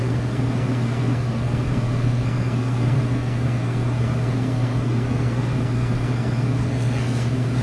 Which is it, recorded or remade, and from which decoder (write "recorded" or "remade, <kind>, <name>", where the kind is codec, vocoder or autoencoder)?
remade, codec, SNAC